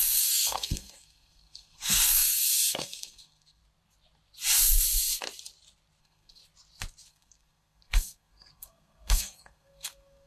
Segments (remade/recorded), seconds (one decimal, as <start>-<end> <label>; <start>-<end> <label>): 0.0-3.6 remade; 3.6-6.0 recorded; 6.0-6.4 remade; 6.4-7.1 recorded; 7.1-10.3 remade